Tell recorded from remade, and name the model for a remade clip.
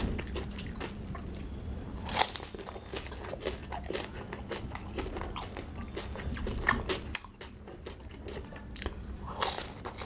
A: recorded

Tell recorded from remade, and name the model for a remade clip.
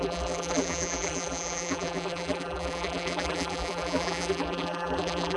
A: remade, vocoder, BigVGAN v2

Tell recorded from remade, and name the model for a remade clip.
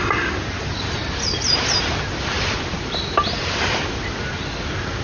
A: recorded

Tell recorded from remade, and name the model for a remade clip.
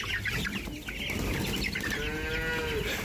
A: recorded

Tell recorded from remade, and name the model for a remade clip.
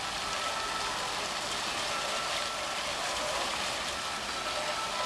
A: recorded